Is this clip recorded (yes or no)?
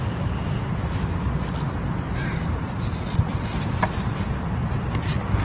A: yes